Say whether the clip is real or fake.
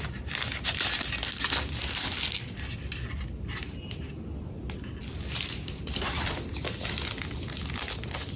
real